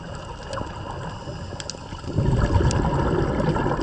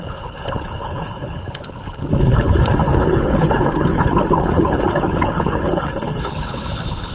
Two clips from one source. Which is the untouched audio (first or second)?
first